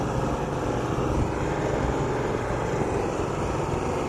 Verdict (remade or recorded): recorded